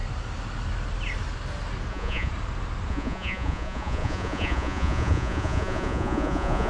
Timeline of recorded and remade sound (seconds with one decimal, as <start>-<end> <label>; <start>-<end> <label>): 0.0-1.9 recorded; 1.9-2.3 remade; 2.3-2.9 recorded; 2.9-6.7 remade